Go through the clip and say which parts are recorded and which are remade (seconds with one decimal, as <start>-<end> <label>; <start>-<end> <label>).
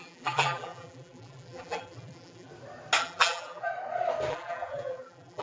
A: 0.0-2.5 remade; 2.5-3.0 recorded; 3.0-3.7 remade; 3.7-4.3 recorded; 4.3-5.4 remade